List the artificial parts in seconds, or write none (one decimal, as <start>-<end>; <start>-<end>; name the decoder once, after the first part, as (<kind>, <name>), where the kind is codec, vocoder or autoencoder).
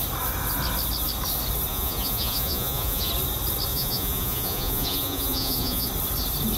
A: 1.7-3.1 (vocoder, Vocos); 3.7-5.9